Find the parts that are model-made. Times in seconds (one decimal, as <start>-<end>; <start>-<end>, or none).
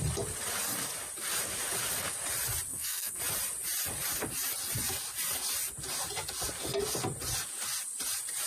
2.7-3.2